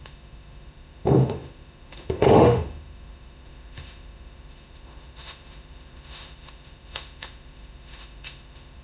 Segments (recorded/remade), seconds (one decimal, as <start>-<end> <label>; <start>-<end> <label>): 0.0-8.8 remade